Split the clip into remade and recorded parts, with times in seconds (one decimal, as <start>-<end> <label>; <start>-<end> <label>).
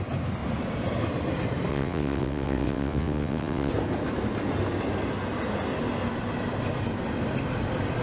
0.0-1.7 recorded; 1.7-3.7 remade; 3.7-8.0 recorded